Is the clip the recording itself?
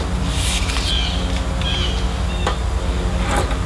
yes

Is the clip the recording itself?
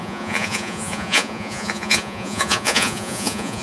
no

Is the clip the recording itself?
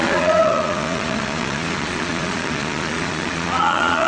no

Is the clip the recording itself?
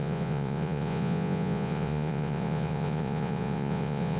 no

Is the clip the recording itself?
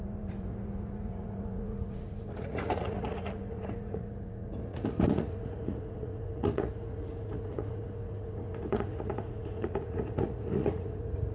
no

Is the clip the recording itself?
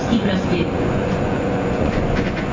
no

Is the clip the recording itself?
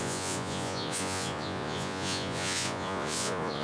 no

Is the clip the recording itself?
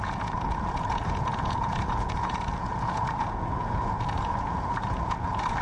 no